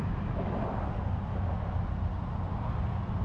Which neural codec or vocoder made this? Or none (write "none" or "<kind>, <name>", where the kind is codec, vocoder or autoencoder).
none